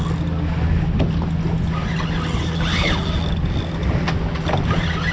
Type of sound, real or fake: real